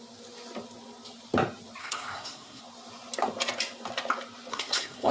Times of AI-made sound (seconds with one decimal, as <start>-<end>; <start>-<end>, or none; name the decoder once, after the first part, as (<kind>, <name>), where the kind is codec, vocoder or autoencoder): 1.8-2.6 (codec, SNAC); 4.5-5.1